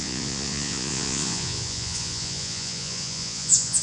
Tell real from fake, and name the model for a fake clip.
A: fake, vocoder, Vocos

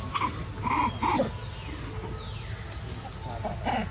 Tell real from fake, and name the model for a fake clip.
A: real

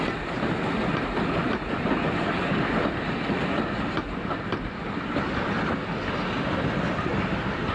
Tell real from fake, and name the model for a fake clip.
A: real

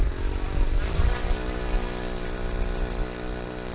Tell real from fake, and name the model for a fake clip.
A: real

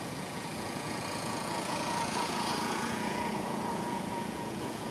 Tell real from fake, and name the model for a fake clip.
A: fake, vocoder, Vocos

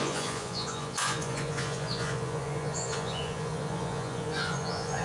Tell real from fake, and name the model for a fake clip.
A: fake, vocoder, Vocos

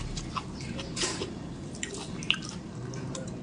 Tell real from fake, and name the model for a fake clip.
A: real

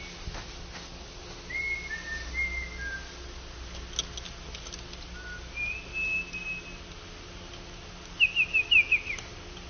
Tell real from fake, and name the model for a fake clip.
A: real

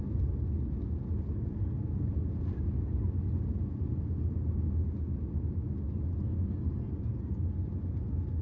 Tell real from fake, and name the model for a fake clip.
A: real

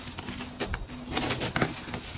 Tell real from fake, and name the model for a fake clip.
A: real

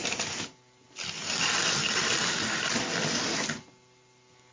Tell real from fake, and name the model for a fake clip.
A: real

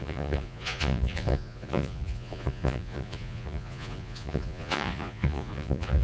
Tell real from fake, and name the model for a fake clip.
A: fake, vocoder, Vocos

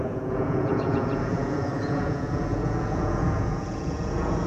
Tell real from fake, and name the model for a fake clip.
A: fake, vocoder, Vocos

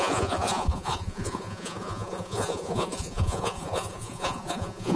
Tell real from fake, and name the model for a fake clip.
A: fake, vocoder, Vocos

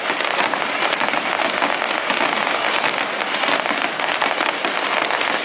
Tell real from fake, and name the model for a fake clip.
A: real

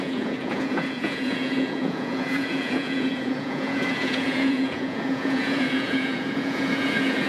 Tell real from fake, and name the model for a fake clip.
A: fake, vocoder, Vocos